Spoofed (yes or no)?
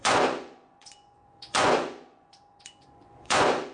yes